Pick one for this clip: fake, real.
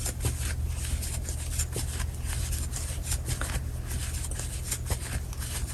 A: real